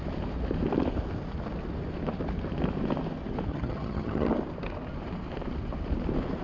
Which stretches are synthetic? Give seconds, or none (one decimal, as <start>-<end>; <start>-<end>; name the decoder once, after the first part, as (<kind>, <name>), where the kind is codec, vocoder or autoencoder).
3.5-4.3 (vocoder, HiFi-GAN)